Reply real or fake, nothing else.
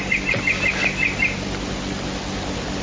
real